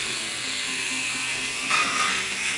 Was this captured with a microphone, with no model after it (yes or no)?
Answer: no